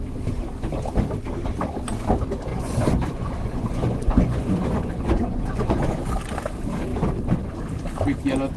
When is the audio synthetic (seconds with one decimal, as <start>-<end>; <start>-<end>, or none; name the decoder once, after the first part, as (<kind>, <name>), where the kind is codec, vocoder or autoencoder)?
2.5-6.2 (vocoder, Vocos)